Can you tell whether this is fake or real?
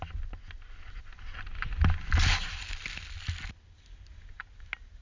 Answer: real